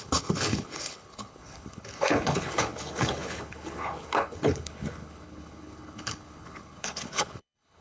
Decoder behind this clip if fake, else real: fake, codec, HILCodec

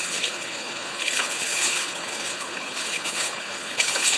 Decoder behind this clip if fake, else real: fake, codec, HILCodec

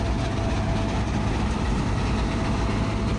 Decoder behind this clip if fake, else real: real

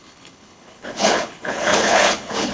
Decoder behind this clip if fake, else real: fake, codec, HILCodec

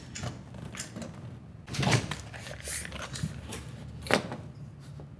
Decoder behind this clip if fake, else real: real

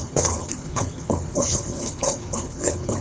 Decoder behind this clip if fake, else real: fake, codec, HILCodec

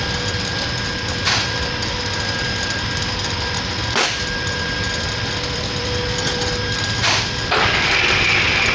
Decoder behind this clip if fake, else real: real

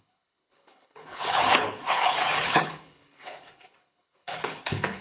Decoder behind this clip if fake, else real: fake, codec, HILCodec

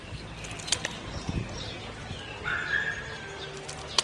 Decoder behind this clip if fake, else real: real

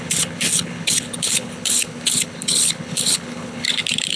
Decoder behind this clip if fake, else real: fake, codec, HILCodec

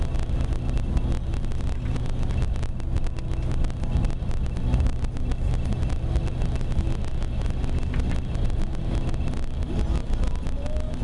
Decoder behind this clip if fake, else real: real